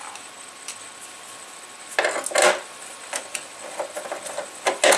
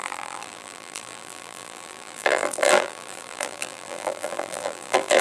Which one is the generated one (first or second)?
second